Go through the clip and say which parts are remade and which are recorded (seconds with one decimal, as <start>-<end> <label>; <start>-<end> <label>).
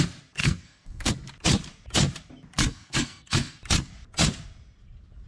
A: 0.0-0.4 recorded; 0.4-1.1 remade; 1.1-2.7 recorded; 2.7-3.6 remade; 3.6-5.3 recorded